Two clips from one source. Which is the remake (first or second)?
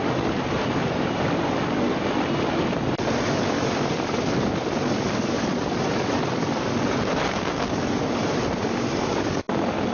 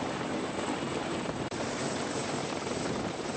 second